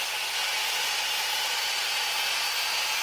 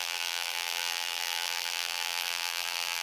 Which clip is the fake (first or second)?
second